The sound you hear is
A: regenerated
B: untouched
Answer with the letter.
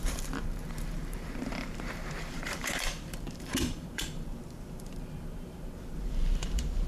A